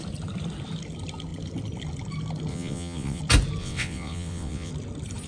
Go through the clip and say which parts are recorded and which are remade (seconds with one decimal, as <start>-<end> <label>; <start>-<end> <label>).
0.0-2.5 recorded; 2.5-3.2 remade; 3.2-3.6 recorded; 3.6-4.7 remade; 4.7-5.3 recorded